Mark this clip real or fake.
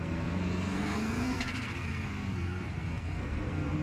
fake